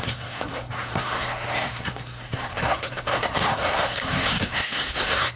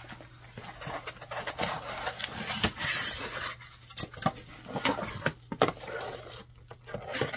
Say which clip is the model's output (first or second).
first